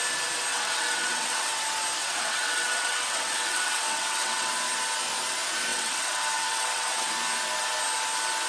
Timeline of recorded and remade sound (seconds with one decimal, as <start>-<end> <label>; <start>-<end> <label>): 0.0-0.5 recorded; 0.5-1.6 remade; 1.6-2.0 recorded; 2.0-4.5 remade; 4.5-5.7 recorded; 5.7-7.1 remade; 7.1-8.5 recorded